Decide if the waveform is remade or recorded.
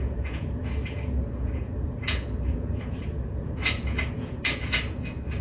remade